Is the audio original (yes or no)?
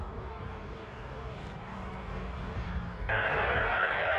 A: no